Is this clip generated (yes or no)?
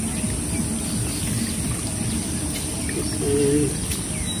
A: no